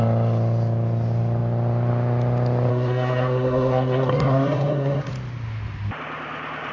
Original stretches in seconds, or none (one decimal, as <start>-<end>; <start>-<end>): 0.0-2.7; 5.1-6.7